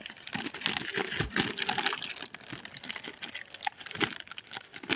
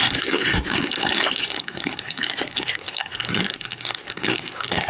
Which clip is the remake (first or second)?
second